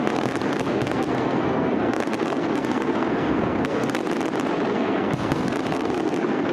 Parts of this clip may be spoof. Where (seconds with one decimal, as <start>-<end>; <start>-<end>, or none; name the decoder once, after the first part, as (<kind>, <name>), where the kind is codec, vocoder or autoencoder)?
0.0-4.0 (codec, SNAC); 4.7-6.5